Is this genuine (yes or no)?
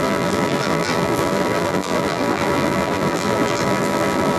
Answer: no